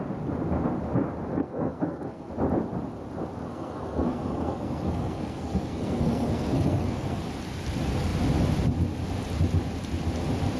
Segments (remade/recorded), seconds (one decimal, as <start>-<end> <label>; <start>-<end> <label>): 0.0-1.3 recorded; 1.3-2.3 remade; 2.3-3.4 recorded; 3.4-7.2 remade; 7.2-10.6 recorded